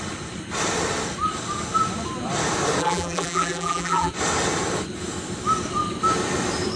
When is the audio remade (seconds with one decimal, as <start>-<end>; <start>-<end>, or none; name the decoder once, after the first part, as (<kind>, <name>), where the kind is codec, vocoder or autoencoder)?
2.8-4.1 (vocoder, BigVGAN v2)